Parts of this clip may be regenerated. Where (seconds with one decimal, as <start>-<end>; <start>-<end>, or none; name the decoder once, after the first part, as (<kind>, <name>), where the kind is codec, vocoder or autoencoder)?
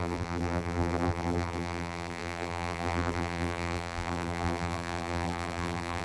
0.0-6.0 (vocoder, BigVGAN v2)